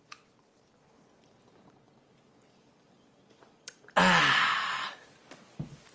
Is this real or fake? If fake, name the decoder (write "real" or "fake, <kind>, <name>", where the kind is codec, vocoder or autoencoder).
real